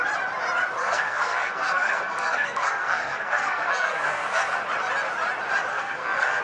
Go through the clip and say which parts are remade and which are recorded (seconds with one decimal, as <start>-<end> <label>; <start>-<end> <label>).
0.0-0.8 recorded; 0.8-4.6 remade; 4.6-5.7 recorded; 5.7-6.4 remade

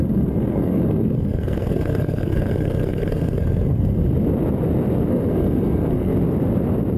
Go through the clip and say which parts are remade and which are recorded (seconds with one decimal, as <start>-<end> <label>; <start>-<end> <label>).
0.0-4.0 remade; 4.0-5.1 recorded; 5.1-6.1 remade; 6.1-7.0 recorded

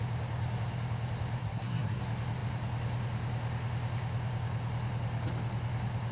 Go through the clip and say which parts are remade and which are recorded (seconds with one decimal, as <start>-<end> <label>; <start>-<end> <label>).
0.0-1.4 recorded; 1.4-2.0 remade; 2.0-6.1 recorded

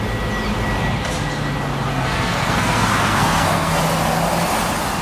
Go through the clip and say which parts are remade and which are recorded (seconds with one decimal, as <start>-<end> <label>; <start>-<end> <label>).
0.0-1.9 recorded; 1.9-3.8 remade; 3.8-5.0 recorded

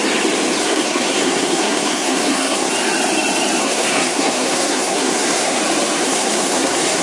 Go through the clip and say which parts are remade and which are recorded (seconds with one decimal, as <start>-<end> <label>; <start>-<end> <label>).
0.0-0.6 recorded; 0.6-2.7 remade; 2.7-3.6 recorded; 3.6-5.6 remade; 5.6-6.0 recorded; 6.0-7.0 remade

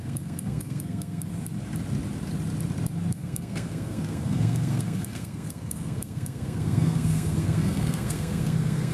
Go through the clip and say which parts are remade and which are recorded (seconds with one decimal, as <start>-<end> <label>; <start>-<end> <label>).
0.0-1.3 remade; 1.3-3.1 recorded; 3.1-8.9 remade

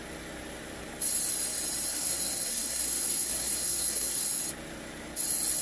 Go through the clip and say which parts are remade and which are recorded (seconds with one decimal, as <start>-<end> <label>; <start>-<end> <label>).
0.0-1.9 recorded; 1.9-4.4 remade; 4.4-5.6 recorded

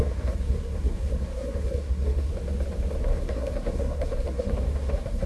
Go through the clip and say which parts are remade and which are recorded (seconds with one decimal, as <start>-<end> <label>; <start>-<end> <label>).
0.0-2.3 remade; 2.3-3.0 recorded; 3.0-5.3 remade